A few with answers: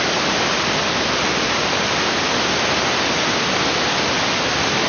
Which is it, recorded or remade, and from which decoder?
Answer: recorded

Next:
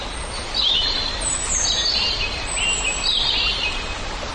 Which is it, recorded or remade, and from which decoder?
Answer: recorded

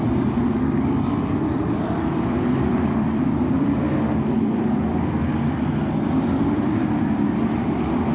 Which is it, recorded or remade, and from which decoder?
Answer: remade, vocoder, BigVGAN v2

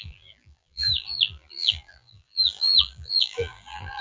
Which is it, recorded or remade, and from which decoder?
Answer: remade, vocoder, BigVGAN v2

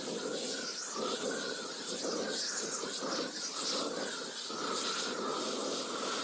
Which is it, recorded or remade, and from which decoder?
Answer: remade, vocoder, BigVGAN v2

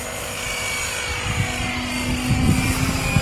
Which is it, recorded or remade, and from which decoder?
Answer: recorded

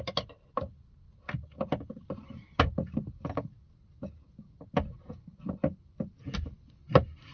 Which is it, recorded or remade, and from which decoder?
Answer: recorded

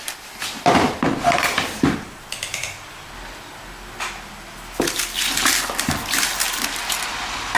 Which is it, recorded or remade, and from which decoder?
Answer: recorded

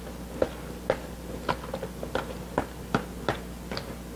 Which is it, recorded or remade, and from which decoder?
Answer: recorded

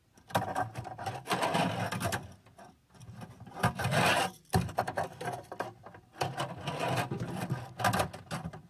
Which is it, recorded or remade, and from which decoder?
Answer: recorded